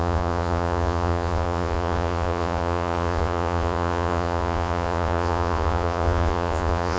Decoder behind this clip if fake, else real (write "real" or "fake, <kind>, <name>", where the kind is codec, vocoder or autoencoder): fake, vocoder, Vocos